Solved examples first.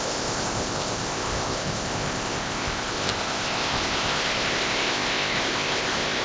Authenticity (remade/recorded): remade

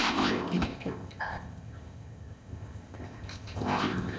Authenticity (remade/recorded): remade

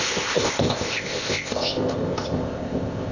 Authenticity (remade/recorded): remade